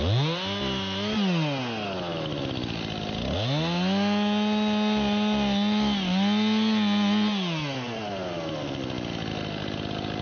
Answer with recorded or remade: recorded